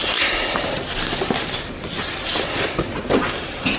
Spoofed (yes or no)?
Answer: no